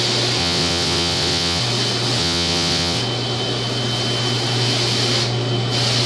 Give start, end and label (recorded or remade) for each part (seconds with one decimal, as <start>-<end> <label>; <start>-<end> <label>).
0.0-0.4 recorded; 0.4-1.6 remade; 1.6-2.2 recorded; 2.2-3.0 remade; 3.0-6.1 recorded